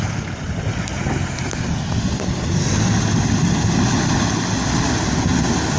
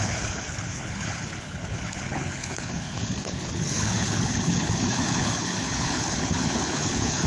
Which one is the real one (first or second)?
first